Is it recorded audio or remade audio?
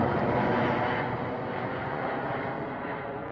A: remade